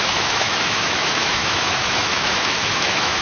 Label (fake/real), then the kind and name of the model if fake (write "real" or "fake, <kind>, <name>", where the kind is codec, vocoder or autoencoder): fake, autoencoder, DAC-VAE